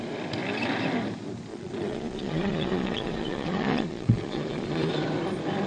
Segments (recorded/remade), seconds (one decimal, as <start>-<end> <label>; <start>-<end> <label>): 0.0-1.5 recorded; 1.5-4.9 remade; 4.9-5.7 recorded